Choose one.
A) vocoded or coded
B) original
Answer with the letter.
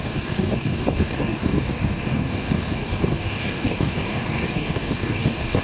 A